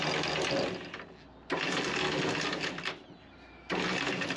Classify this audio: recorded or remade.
recorded